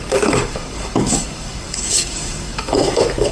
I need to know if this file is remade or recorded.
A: remade